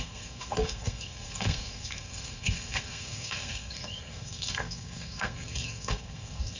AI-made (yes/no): yes